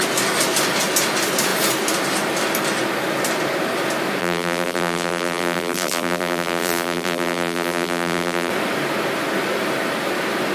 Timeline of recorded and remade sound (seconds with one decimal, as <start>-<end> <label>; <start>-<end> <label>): 0.0-4.2 recorded; 4.2-8.5 remade; 8.5-10.5 recorded